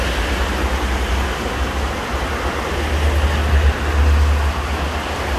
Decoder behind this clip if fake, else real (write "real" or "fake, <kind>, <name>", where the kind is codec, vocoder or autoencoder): real